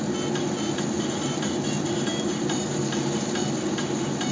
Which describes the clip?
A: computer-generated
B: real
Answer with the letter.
B